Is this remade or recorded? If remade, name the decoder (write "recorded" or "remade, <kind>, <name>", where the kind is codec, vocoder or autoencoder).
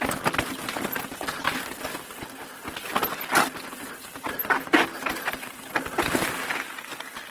recorded